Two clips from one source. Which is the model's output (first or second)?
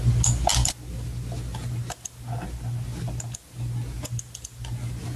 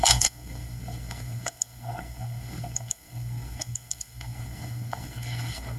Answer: second